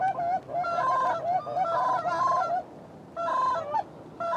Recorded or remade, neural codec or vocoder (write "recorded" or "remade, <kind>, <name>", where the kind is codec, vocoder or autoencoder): recorded